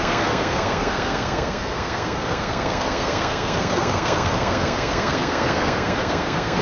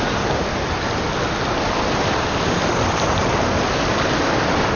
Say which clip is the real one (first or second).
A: second